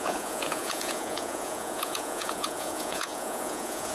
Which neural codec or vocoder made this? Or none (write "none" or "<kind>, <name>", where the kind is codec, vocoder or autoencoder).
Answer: vocoder, Vocos